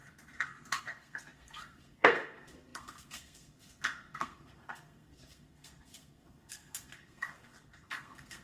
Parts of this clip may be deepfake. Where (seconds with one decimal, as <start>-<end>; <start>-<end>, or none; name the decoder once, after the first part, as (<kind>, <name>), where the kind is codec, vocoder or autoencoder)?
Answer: 0.0-8.4 (codec, SNAC)